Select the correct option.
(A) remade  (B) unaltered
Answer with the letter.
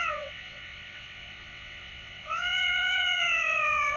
A